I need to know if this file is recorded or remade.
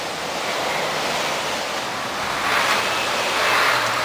recorded